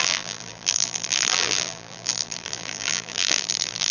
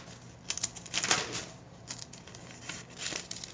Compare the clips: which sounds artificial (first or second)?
first